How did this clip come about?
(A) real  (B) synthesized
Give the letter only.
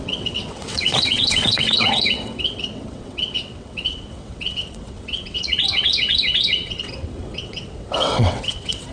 B